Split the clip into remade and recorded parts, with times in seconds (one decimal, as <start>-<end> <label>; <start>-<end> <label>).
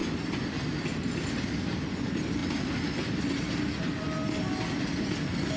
0.0-5.6 recorded